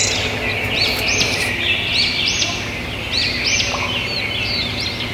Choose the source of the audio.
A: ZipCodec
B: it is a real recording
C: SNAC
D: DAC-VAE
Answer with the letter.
B